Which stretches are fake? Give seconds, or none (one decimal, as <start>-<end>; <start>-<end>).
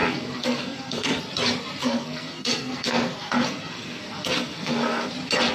0.0-1.2; 1.8-5.1